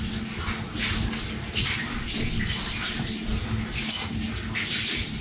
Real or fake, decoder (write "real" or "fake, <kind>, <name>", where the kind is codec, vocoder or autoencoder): real